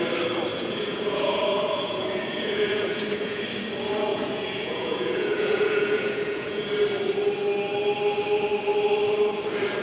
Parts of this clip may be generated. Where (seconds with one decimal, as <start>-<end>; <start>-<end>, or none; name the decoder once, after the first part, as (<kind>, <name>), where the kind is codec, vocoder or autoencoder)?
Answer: 0.5-3.4 (vocoder, Vocos); 4.1-6.7